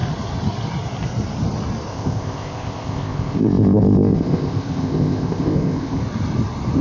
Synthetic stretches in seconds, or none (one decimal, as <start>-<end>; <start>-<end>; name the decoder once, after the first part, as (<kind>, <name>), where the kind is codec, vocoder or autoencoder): 1.9-6.0 (codec, ZipCodec)